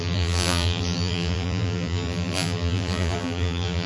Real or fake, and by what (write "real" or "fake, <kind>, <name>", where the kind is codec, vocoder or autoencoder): fake, vocoder, BigVGAN v2